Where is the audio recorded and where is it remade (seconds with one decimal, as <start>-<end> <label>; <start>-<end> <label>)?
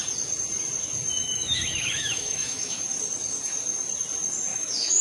0.0-1.2 recorded; 1.2-2.8 remade; 2.8-4.5 recorded; 4.5-5.0 remade